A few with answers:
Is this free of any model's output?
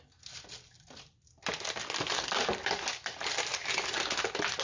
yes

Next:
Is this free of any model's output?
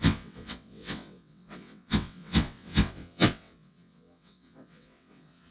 no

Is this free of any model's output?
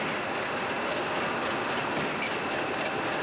yes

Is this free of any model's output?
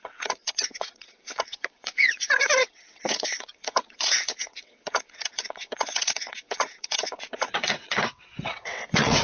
no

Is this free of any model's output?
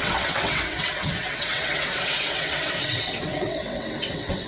no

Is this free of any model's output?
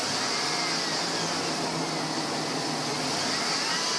yes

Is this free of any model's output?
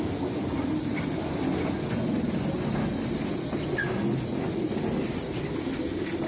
yes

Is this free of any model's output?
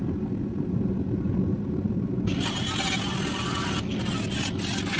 yes